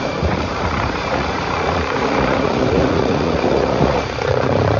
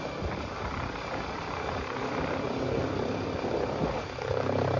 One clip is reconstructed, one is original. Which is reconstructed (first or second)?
first